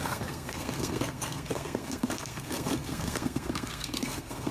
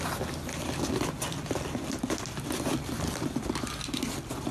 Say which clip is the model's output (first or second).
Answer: first